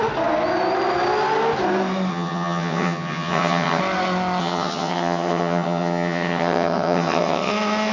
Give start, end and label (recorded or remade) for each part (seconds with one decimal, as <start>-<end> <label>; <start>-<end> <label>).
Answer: 0.0-2.1 recorded; 2.1-3.8 remade; 3.8-4.4 recorded; 4.4-7.5 remade; 7.5-7.9 recorded